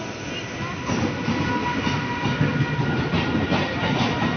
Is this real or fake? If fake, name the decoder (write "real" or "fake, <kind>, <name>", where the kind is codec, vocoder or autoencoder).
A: real